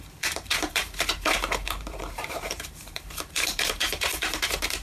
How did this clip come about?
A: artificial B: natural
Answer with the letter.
A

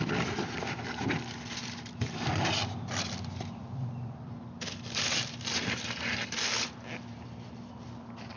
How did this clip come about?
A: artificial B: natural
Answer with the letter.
A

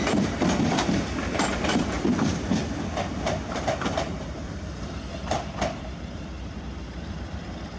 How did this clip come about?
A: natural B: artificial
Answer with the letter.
B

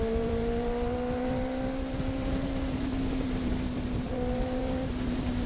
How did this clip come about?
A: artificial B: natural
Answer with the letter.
A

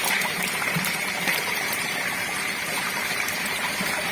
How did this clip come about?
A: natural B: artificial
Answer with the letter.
B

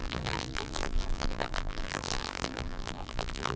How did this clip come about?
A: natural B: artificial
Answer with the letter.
B